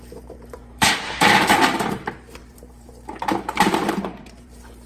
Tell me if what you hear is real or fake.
fake